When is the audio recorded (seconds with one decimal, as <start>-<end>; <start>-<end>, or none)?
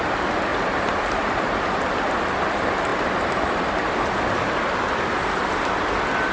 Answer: 0.0-6.3